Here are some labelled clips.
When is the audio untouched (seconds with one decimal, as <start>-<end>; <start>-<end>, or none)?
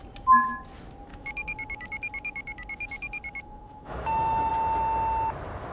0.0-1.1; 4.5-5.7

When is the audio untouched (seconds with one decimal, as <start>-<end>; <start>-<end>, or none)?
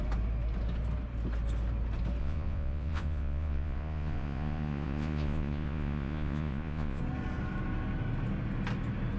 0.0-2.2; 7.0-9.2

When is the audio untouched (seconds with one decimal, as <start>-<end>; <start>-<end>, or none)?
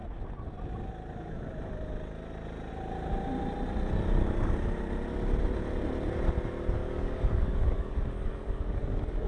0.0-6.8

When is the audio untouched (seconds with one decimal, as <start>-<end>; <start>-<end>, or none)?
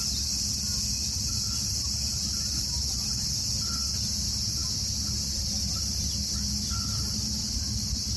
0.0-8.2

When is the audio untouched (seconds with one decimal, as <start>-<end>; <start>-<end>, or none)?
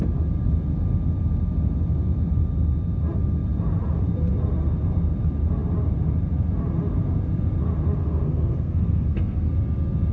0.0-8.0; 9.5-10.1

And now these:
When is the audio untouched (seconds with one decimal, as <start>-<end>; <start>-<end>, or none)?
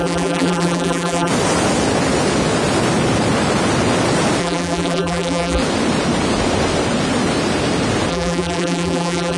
1.3-4.4; 5.6-8.1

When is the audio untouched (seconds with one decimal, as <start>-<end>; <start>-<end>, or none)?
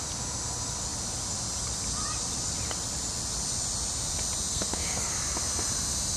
0.0-4.5; 5.1-6.2